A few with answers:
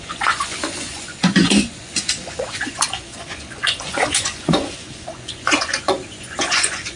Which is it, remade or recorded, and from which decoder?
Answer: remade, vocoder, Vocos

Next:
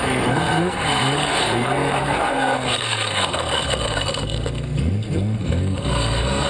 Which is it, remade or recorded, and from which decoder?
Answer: remade, codec, SNAC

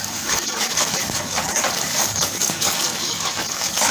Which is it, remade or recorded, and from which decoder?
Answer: remade, codec, DAC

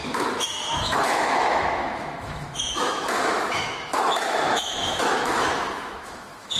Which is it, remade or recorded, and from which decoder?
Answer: remade, autoencoder, DAC-VAE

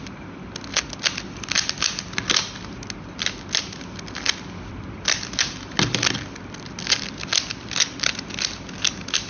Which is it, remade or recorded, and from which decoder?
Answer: recorded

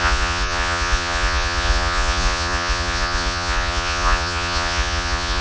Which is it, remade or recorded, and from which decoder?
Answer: remade, vocoder, Vocos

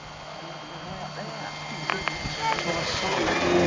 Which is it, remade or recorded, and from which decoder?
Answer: recorded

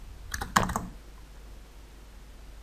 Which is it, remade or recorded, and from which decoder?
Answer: recorded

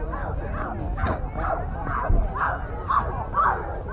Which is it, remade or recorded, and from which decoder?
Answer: recorded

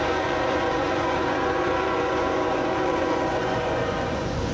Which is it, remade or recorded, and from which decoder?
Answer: remade, vocoder, Vocos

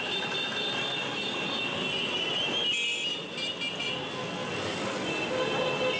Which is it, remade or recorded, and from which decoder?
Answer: recorded